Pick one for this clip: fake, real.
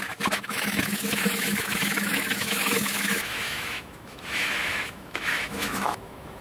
fake